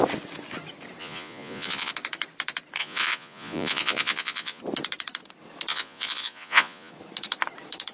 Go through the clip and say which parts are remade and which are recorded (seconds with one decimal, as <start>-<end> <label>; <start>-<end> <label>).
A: 0.0-1.0 recorded; 1.0-1.9 remade; 1.9-2.8 recorded; 2.8-4.6 remade; 4.6-5.7 recorded; 5.7-6.9 remade; 6.9-7.9 recorded